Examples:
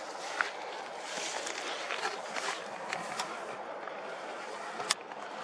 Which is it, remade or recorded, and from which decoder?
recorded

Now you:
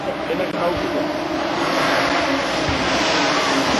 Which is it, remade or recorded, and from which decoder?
recorded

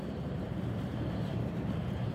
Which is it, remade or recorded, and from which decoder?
remade, vocoder, BigVGAN v2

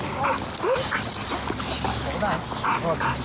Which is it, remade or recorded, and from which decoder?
recorded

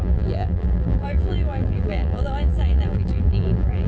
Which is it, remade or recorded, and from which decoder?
remade, vocoder, BigVGAN v2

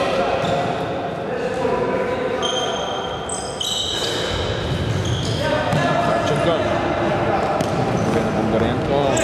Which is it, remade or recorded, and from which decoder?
recorded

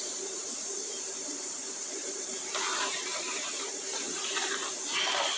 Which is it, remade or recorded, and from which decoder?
remade, vocoder, BigVGAN v2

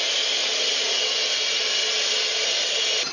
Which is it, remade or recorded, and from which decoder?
recorded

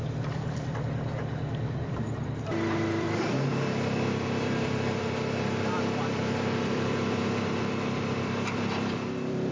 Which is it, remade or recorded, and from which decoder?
remade, vocoder, BigVGAN v2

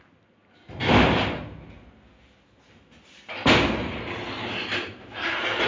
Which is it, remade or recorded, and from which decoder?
recorded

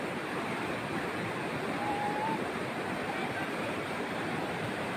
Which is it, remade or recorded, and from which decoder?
remade, vocoder, BigVGAN v2